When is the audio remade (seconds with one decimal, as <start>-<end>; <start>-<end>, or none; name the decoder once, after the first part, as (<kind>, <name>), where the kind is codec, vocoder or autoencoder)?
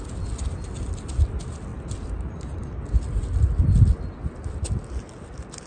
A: none